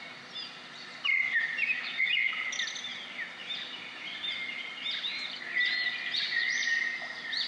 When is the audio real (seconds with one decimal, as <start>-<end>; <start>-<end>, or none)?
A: 0.0-7.5